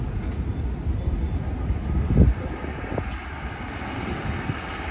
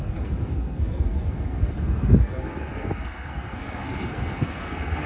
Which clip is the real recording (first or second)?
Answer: first